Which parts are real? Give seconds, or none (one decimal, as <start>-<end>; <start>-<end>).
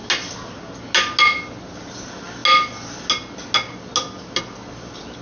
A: 0.0-5.2